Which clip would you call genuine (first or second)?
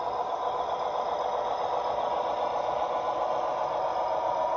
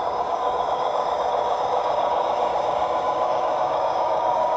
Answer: first